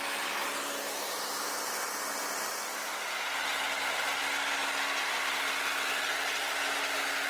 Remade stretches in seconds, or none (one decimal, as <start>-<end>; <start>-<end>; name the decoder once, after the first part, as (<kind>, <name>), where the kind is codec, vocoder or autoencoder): none